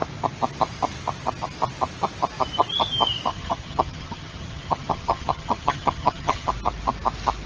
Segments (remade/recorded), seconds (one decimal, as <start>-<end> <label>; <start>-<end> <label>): 0.0-3.3 recorded; 3.3-6.5 remade; 6.5-7.5 recorded